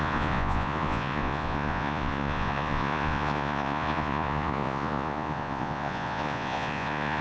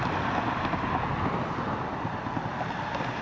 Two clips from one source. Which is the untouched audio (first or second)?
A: second